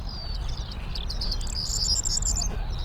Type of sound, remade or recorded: recorded